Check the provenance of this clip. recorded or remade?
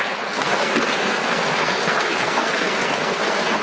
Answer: remade